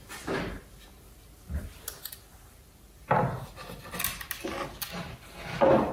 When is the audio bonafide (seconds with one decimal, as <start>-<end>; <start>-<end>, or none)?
0.0-0.9; 2.1-5.9